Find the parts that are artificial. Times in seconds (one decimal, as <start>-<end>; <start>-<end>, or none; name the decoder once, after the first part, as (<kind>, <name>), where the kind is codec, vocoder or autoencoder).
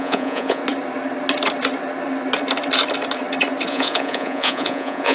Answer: 0.0-0.6 (vocoder, Vocos); 3.7-5.1